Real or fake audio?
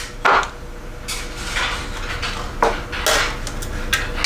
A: real